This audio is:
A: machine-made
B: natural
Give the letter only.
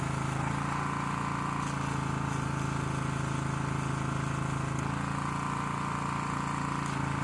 B